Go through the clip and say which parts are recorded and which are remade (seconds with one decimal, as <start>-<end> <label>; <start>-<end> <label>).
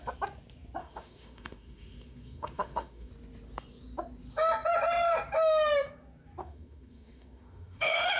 0.0-0.8 recorded; 0.8-3.1 remade; 3.1-6.4 recorded; 6.4-8.2 remade